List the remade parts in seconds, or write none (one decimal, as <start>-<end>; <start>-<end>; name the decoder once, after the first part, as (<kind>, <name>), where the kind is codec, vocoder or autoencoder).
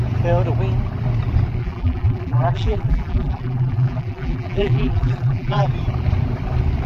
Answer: 1.6-5.7 (vocoder, BigVGAN v2)